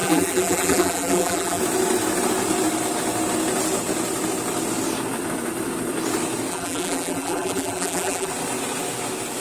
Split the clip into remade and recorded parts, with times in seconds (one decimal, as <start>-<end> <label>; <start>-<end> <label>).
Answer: 0.0-1.6 remade; 1.6-6.5 recorded; 6.5-8.3 remade; 8.3-9.4 recorded